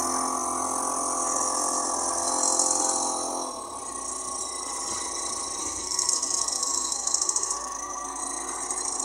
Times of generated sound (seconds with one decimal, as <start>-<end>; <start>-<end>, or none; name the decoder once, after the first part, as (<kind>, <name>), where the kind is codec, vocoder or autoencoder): 5.6-8.2 (codec, SNAC)